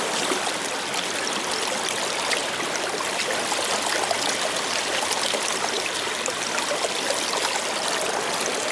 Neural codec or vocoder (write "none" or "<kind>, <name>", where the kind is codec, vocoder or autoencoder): none